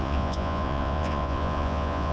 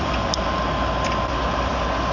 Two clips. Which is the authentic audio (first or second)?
second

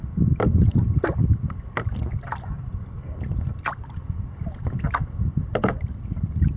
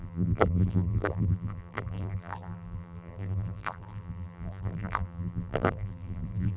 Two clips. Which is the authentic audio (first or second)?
first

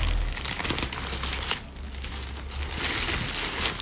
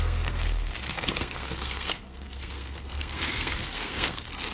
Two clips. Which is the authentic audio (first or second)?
first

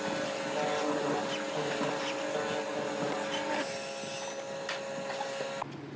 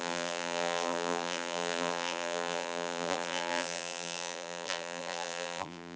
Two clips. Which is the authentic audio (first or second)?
first